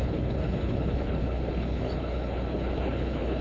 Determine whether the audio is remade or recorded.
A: remade